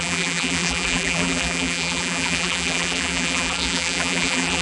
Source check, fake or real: fake